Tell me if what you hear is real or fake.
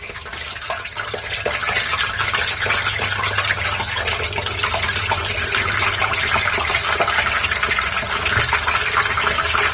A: real